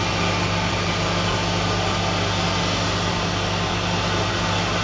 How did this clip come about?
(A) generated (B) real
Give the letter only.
B